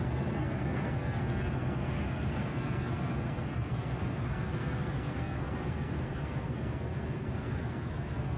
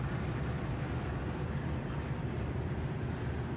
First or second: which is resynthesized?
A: first